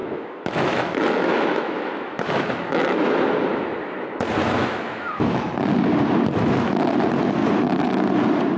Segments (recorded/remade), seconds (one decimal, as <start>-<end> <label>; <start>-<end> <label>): 0.0-3.2 remade; 3.2-4.6 recorded; 4.6-5.4 remade; 5.4-8.6 recorded